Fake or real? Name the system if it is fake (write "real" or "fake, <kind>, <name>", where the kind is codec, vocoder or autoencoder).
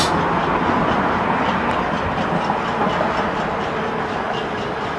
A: real